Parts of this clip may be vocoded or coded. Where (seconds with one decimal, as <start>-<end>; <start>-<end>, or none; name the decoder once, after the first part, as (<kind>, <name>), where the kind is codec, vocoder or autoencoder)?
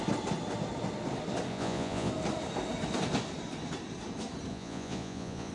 1.5-2.1 (vocoder, Vocos); 4.5-5.5